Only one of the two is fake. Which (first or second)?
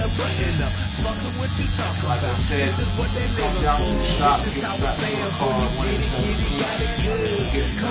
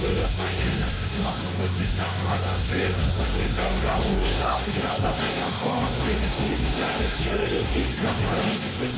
second